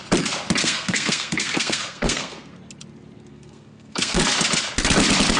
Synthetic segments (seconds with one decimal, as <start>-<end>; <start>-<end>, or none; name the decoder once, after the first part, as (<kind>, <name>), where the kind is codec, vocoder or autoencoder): 0.6-2.5 (codec, SNAC); 3.3-4.2